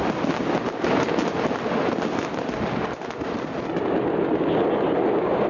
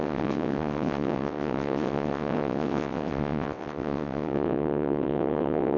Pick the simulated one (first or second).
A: second